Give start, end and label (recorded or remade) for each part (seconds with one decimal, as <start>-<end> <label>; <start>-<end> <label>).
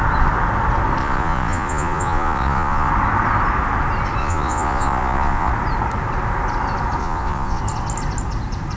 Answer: 0.0-1.0 recorded; 1.0-2.9 remade; 2.9-4.2 recorded; 4.2-5.5 remade; 5.5-7.0 recorded; 7.0-7.6 remade; 7.6-8.8 recorded